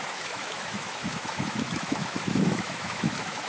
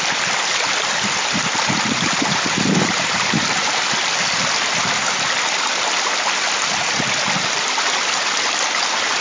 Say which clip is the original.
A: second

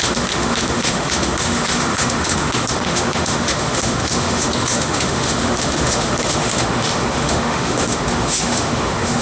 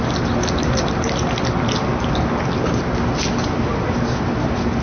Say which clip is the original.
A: second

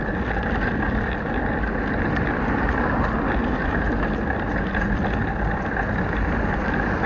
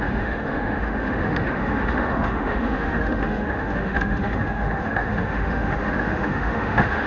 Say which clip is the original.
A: first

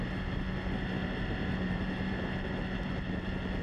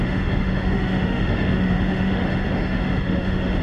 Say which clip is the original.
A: first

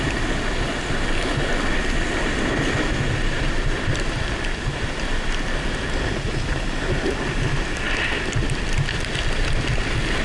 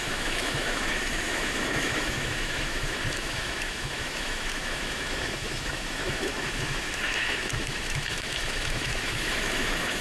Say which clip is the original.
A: first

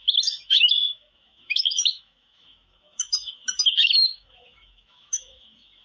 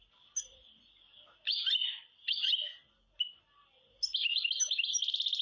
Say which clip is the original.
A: second